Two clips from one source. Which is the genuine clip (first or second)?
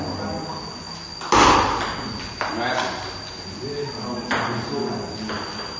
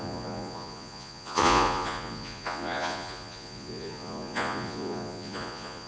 first